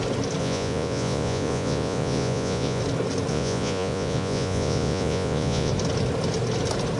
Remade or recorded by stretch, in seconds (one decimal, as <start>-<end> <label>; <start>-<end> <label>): 0.0-0.4 recorded; 0.4-2.8 remade; 2.8-3.3 recorded; 3.3-5.7 remade; 5.7-7.0 recorded